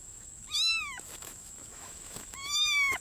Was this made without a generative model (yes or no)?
no